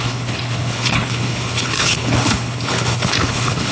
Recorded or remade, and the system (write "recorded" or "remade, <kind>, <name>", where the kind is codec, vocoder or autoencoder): remade, codec, HILCodec